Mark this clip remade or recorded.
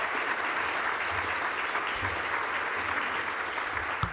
recorded